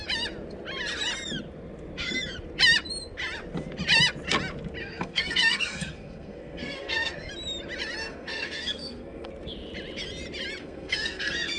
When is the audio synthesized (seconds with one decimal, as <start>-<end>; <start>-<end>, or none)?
4.8-7.3; 8.0-9.3; 10.6-11.6